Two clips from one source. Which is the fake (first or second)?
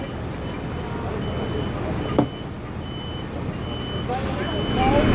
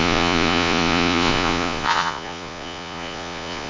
second